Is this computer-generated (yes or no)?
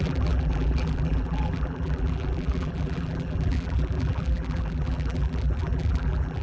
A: yes